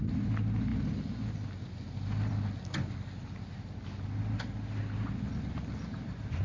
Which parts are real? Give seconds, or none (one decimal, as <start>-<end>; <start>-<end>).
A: 0.0-6.4